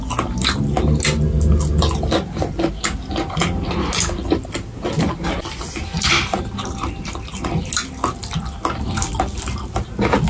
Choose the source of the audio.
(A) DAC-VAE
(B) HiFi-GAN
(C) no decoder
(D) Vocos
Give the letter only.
C